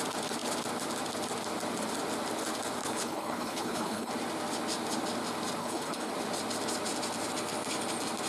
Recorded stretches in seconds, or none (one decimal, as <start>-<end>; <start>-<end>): 0.0-2.8; 4.1-5.6; 6.1-8.3